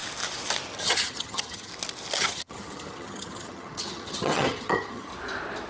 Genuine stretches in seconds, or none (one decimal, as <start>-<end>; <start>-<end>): 0.0-0.8; 1.7-2.2; 5.1-5.7